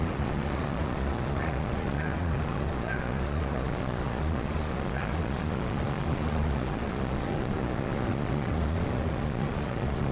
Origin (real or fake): fake